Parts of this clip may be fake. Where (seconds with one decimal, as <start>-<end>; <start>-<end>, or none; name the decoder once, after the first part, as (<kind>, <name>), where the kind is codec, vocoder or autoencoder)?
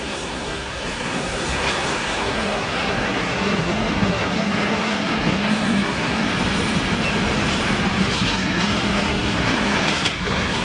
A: 0.0-6.3 (codec, SNAC); 8.0-10.6